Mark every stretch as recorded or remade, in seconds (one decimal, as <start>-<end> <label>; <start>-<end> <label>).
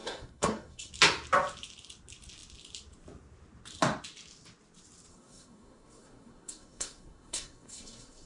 0.0-0.9 remade; 0.9-5.1 recorded; 5.1-8.3 remade